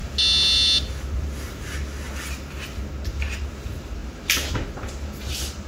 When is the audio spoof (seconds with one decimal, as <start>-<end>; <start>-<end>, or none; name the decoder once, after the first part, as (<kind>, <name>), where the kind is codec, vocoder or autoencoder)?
none